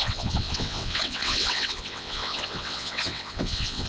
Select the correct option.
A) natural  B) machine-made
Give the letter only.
B